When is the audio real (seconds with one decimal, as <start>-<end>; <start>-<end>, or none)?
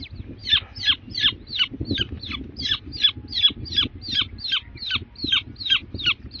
0.0-6.4